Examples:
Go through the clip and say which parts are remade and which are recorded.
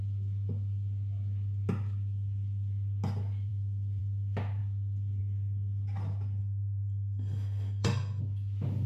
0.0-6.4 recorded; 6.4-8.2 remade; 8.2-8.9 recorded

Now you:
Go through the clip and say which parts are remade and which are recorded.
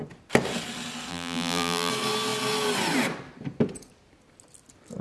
0.0-1.1 recorded; 1.1-1.9 remade; 1.9-5.0 recorded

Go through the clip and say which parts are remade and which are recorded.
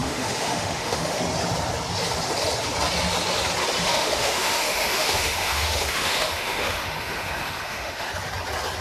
0.0-1.2 remade; 1.2-3.8 recorded; 3.8-8.1 remade; 8.1-8.8 recorded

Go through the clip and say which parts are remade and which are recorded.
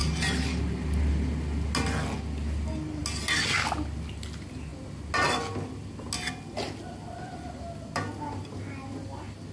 0.0-9.5 recorded